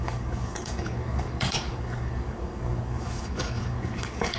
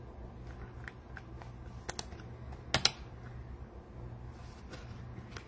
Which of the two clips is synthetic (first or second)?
first